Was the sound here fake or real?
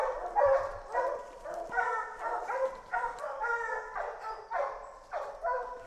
real